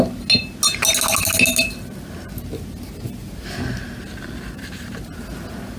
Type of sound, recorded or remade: recorded